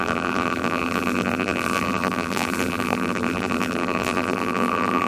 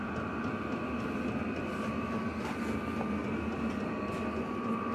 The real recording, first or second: second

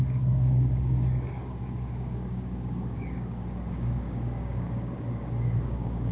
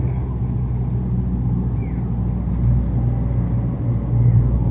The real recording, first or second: second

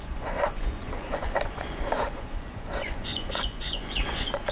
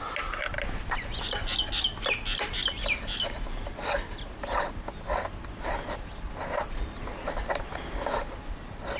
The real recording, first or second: second